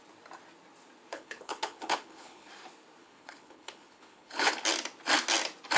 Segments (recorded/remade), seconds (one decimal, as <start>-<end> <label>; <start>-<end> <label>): 0.0-1.1 recorded; 1.1-2.5 remade; 2.5-3.0 recorded; 3.0-4.5 remade; 4.5-5.8 recorded